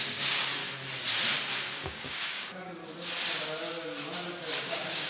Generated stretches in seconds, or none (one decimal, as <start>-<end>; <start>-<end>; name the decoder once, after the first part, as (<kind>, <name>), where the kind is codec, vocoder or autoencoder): 0.0-0.6 (codec, DAC); 1.7-2.8; 4.6-5.1